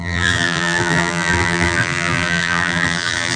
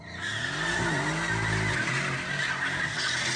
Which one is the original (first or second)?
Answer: second